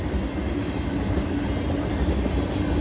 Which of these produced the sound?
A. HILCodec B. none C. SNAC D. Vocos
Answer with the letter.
B